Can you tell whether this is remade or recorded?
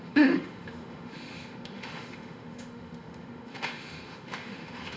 remade